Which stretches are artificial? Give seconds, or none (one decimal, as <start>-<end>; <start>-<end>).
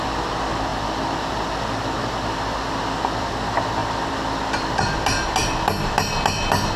none